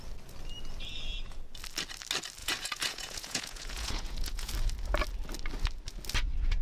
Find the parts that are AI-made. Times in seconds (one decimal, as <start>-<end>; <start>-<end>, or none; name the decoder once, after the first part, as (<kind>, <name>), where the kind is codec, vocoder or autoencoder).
2.4-4.5 (vocoder, Vocos)